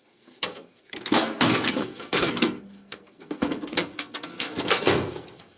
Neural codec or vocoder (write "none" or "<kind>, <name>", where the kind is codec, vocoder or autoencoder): codec, SNAC